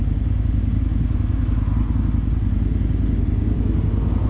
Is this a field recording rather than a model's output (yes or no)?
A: yes